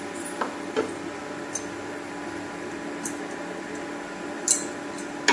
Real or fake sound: real